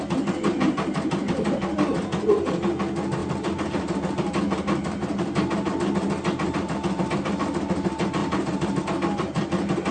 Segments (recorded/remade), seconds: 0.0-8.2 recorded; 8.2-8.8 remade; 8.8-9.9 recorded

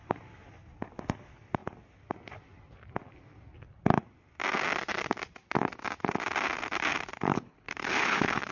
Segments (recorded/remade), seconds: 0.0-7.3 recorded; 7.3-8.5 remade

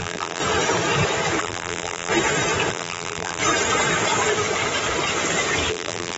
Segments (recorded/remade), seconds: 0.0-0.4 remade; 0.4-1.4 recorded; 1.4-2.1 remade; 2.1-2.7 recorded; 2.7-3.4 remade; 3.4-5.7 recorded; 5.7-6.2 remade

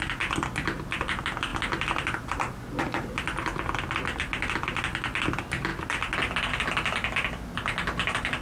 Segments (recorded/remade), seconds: 0.0-8.4 recorded

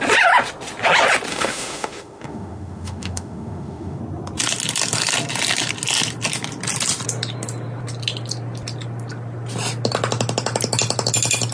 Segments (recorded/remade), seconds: 0.0-1.3 recorded; 1.3-4.0 remade; 4.0-11.5 recorded